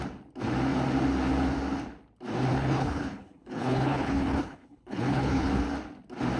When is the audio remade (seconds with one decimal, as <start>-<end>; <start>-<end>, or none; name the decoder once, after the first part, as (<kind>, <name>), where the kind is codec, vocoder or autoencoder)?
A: 2.5-5.5 (codec, HILCodec)

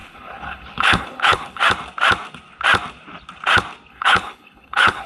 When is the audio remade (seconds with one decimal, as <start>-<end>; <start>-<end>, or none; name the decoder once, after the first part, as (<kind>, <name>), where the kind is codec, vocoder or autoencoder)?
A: 0.0-1.6 (codec, HILCodec); 3.9-5.1

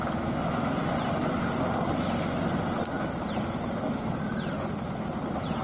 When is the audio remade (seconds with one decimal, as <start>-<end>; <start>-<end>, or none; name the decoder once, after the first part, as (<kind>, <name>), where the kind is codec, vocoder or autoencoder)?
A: none

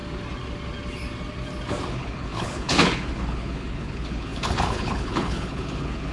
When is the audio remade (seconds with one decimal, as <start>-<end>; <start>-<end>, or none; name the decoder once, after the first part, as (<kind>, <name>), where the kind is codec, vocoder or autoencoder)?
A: 1.9-6.1 (codec, HILCodec)